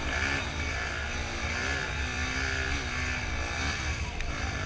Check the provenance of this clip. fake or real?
real